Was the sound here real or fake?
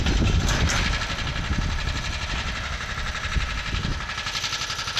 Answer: real